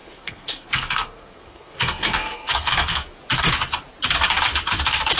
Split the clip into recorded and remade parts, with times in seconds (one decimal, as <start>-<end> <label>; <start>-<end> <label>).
0.0-3.1 remade; 3.1-5.2 recorded